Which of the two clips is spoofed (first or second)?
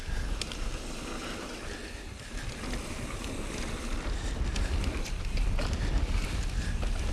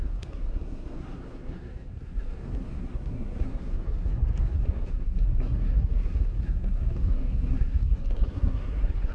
second